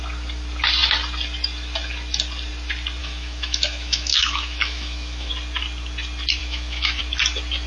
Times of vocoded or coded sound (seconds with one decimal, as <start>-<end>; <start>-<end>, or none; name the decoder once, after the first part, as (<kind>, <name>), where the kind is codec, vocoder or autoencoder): 3.0-5.3 (autoencoder, DAC-VAE); 6.4-7.0